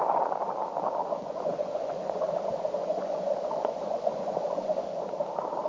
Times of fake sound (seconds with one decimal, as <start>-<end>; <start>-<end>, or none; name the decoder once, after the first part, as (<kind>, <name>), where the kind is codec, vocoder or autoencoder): 1.0-2.3 (vocoder, Vocos); 2.8-5.0